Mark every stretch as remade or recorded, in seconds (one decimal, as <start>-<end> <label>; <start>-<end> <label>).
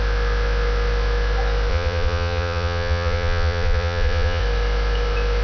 0.0-1.7 recorded; 1.7-4.4 remade; 4.4-5.4 recorded